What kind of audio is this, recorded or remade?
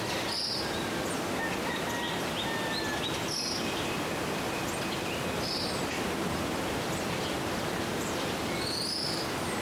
recorded